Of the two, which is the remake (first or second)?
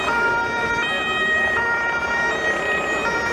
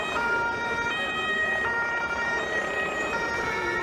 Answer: second